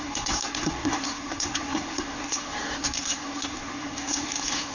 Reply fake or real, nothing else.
fake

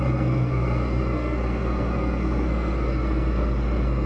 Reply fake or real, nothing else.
fake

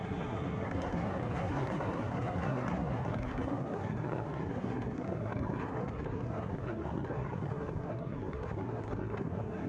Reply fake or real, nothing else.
fake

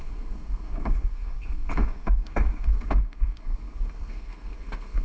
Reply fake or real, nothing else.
fake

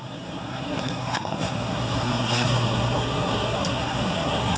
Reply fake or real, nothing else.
fake